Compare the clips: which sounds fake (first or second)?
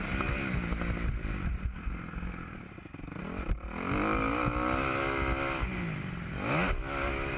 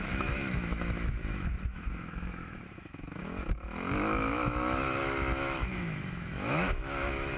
second